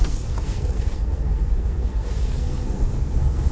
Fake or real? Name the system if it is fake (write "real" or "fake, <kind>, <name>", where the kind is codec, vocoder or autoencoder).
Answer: fake, codec, SNAC